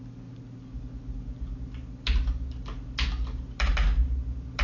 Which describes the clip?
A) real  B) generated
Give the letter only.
A